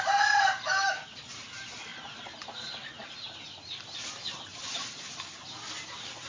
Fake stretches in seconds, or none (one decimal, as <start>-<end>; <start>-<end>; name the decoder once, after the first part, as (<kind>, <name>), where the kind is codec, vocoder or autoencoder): none